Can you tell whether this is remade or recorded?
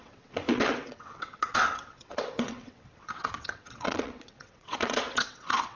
remade